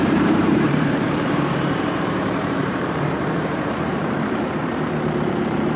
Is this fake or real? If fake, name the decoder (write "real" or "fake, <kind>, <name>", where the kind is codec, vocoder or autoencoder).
fake, vocoder, BigVGAN v2